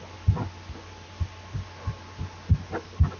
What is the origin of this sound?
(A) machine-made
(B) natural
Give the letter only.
B